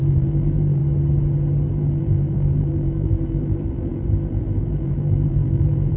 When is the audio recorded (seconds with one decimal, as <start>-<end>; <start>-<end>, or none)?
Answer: 0.8-1.7